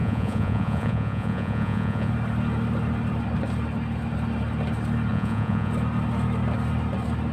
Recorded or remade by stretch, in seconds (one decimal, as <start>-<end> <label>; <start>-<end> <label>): 0.0-2.1 remade; 2.1-5.1 recorded; 5.1-5.7 remade; 5.7-7.3 recorded